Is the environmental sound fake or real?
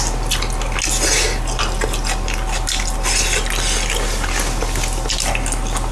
real